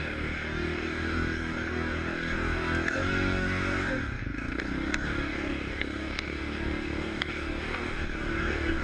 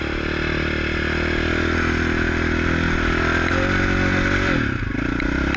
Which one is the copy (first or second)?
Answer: first